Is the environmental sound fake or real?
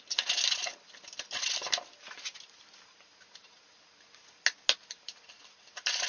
real